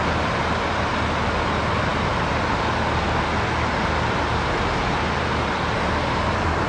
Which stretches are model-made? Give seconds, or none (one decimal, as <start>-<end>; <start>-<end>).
none